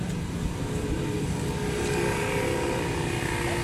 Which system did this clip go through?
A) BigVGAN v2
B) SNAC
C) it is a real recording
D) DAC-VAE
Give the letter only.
C